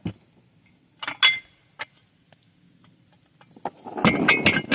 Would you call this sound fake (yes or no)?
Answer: no